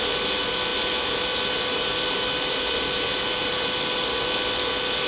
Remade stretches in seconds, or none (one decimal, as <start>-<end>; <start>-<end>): none